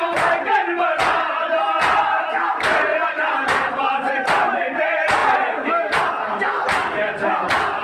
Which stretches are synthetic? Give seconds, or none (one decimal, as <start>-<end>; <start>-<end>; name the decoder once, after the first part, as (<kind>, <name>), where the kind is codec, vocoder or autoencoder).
none